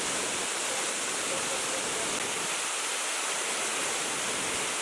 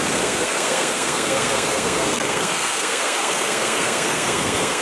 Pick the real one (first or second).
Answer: first